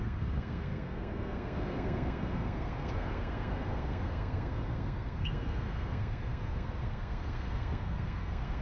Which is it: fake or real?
fake